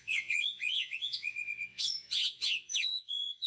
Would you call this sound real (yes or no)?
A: no